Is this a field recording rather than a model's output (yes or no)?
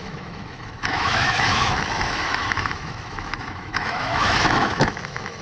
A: no